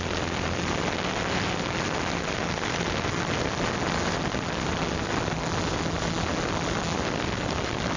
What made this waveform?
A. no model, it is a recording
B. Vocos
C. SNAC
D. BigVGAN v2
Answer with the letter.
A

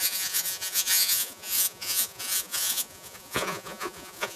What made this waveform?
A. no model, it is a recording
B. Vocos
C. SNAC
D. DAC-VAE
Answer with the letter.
B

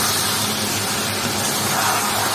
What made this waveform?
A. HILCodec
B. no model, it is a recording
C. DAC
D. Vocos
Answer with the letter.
B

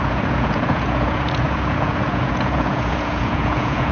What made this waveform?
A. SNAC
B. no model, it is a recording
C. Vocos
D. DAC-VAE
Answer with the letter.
C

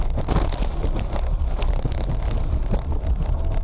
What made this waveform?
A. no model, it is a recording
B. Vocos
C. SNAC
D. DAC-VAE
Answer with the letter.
A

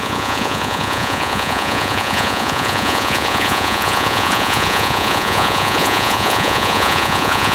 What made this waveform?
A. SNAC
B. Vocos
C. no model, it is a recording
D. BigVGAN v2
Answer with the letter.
B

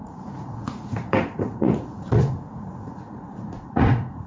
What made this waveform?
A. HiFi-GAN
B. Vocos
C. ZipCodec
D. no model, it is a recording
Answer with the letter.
B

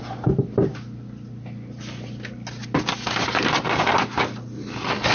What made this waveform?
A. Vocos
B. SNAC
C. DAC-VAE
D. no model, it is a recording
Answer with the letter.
D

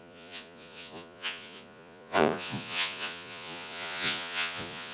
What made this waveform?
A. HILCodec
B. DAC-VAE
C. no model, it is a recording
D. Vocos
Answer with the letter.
D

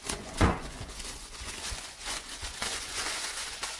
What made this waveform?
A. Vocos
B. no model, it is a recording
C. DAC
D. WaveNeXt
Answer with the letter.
A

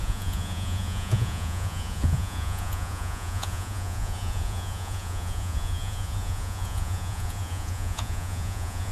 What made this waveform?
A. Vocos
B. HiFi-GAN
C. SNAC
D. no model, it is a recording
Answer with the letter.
A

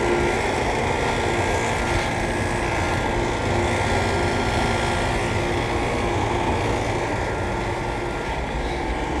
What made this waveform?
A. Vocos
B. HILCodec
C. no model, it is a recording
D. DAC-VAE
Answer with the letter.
C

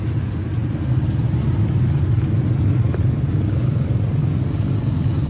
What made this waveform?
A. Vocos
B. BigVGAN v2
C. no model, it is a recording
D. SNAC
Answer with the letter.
C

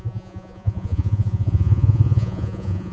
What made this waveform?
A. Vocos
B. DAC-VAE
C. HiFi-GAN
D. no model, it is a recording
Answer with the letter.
A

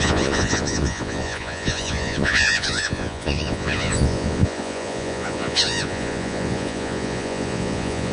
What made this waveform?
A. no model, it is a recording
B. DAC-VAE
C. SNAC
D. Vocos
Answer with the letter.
D